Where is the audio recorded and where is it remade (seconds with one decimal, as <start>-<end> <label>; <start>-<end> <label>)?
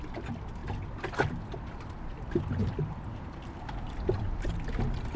0.0-5.2 recorded